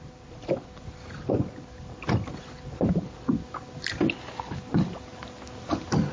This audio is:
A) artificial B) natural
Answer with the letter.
B